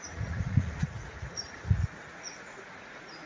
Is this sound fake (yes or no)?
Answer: yes